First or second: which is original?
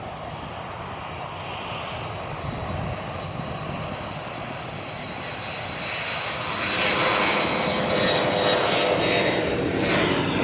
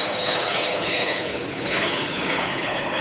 first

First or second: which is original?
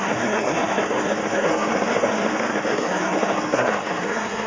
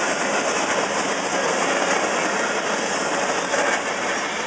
second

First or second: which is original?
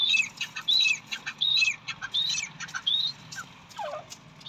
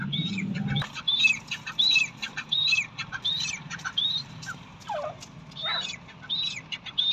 first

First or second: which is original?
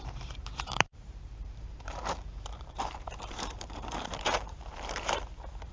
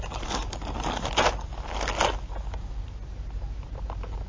second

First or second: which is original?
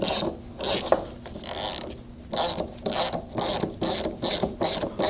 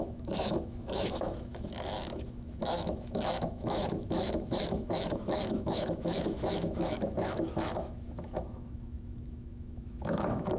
first